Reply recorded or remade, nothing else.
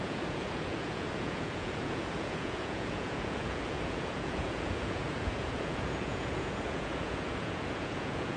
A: remade